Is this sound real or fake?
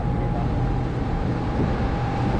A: real